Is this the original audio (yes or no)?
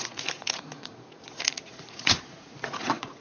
no